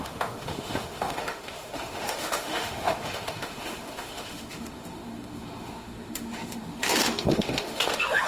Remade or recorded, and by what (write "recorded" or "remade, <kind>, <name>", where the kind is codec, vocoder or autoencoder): remade, autoencoder, DAC-VAE